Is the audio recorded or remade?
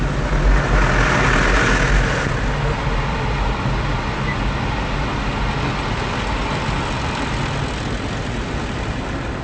recorded